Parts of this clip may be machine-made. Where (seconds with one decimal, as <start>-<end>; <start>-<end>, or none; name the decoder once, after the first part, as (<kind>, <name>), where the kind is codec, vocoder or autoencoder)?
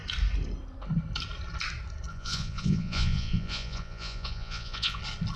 2.1-5.0 (vocoder, Vocos)